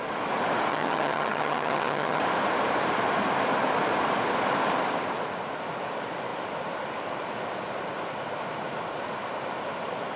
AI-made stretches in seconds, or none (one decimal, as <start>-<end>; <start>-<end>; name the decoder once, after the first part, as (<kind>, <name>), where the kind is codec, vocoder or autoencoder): 0.7-2.2 (vocoder, HiFi-GAN)